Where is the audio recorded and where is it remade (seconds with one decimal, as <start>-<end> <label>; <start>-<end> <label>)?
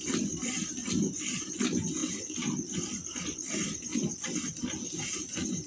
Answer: 0.0-5.7 recorded